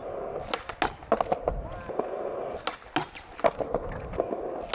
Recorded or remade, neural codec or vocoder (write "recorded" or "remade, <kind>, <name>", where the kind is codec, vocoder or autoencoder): recorded